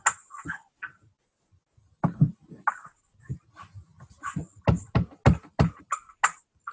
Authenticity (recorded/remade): recorded